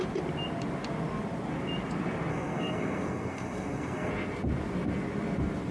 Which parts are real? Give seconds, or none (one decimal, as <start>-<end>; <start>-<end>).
0.0-2.3; 4.1-5.7